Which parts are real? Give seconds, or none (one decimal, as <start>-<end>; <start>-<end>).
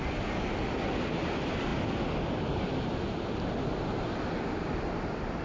0.0-5.4